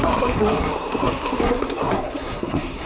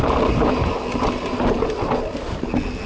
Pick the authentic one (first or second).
second